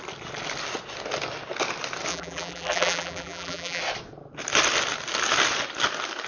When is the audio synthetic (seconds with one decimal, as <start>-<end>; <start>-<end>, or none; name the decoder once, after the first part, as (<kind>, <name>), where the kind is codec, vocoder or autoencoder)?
2.1-3.8 (vocoder, BigVGAN v2)